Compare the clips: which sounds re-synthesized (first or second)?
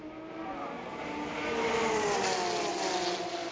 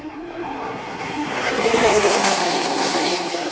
second